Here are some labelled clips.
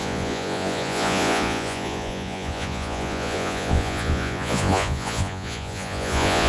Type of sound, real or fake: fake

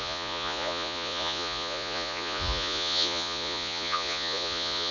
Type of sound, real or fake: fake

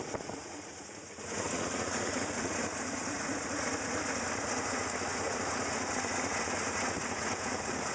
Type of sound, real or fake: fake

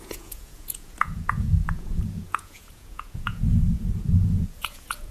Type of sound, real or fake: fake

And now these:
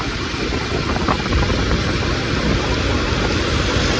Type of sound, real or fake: real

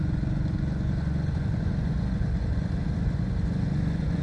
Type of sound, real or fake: fake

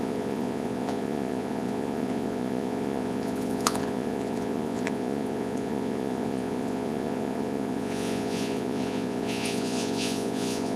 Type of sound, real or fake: fake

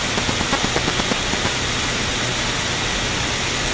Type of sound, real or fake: real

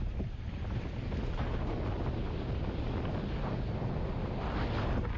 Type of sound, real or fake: real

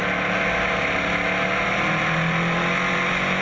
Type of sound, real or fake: real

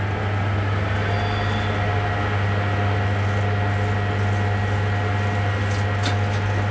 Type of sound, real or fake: real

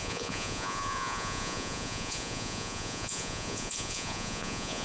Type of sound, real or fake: fake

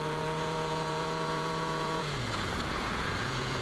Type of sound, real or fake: fake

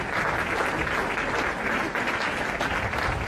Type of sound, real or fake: real